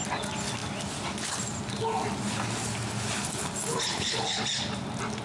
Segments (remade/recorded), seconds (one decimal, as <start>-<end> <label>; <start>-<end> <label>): 0.0-3.7 recorded; 3.7-4.4 remade; 4.4-5.2 recorded